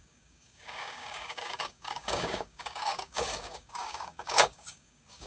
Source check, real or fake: fake